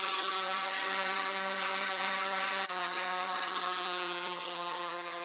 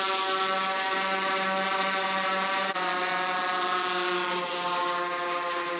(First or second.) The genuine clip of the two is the second